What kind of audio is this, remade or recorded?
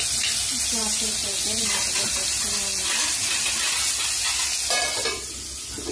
recorded